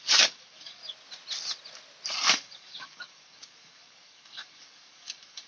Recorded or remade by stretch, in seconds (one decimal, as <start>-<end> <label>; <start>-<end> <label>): 0.0-0.8 remade; 0.8-2.3 recorded; 2.3-5.5 remade